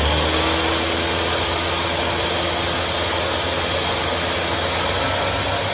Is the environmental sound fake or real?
real